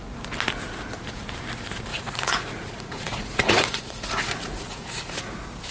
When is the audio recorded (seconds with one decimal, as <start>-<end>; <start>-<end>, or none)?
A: 0.0-1.9; 5.3-5.7